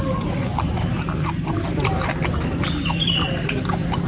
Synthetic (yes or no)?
no